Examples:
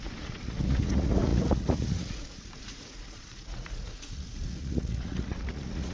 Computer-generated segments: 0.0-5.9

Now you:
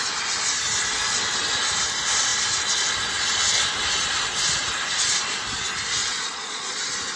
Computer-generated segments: 6.0-6.8

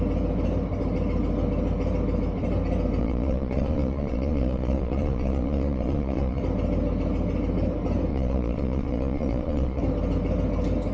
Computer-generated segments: 3.0-6.4; 8.1-9.8